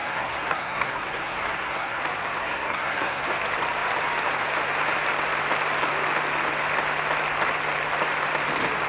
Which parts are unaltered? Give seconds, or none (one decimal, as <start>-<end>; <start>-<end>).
2.0-2.4; 3.2-8.9